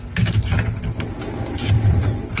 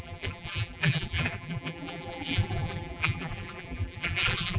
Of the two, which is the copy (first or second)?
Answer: second